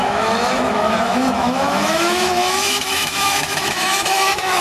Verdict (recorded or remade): remade